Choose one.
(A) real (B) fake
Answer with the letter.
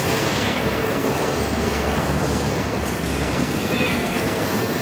B